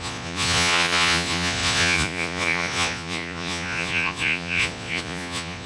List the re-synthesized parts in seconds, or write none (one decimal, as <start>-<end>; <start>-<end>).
0.0-5.7